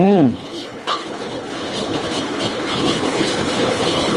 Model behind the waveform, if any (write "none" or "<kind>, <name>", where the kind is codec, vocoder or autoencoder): codec, HILCodec